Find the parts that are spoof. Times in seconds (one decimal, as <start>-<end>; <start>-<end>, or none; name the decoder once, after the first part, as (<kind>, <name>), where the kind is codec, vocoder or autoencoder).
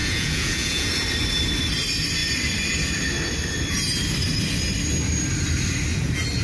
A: 0.0-0.9 (vocoder, Vocos)